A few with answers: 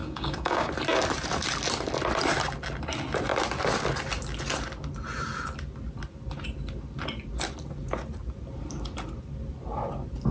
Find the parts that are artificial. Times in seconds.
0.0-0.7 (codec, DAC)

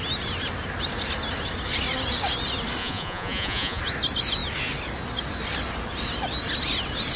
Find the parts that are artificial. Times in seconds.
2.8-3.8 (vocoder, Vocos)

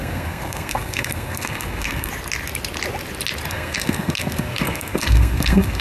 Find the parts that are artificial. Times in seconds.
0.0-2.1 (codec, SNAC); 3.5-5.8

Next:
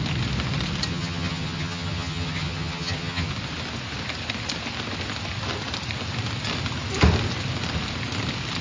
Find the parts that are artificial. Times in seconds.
0.9-3.3 (vocoder, HiFi-GAN)

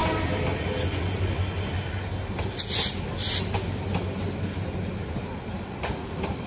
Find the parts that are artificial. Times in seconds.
none

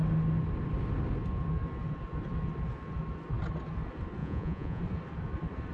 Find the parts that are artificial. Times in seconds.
4.2-4.8 (vocoder, Vocos)